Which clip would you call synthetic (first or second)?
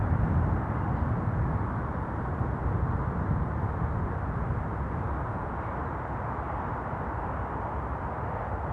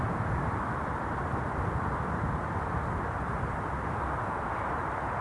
second